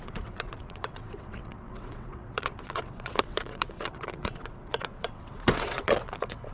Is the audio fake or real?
fake